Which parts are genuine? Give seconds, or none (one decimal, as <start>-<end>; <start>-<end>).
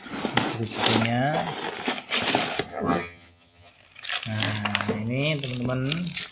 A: 0.0-2.7; 3.7-6.3